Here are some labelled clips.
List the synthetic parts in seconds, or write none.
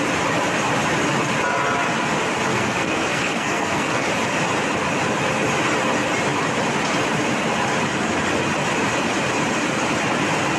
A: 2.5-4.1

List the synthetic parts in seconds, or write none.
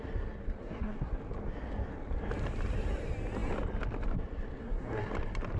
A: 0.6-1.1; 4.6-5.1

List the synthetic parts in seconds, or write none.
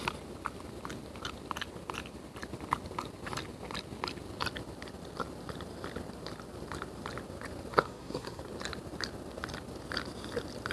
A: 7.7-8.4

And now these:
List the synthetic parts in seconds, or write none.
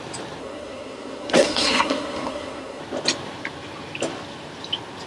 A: 0.4-2.8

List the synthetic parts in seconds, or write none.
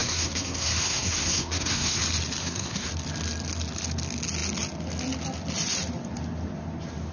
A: 0.0-2.0; 2.4-2.9